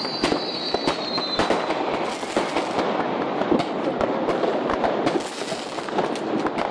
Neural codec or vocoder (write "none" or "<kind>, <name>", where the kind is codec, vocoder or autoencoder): none